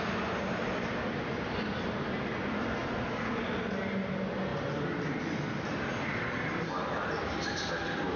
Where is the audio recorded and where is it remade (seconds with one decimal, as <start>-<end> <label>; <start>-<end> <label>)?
0.0-2.8 recorded; 2.8-3.6 remade; 3.6-8.2 recorded